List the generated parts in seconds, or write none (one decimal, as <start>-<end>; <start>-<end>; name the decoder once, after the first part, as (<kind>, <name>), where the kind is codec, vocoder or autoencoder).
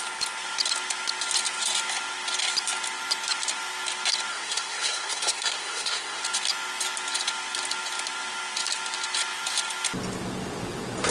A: 4.3-6.2 (codec, SNAC)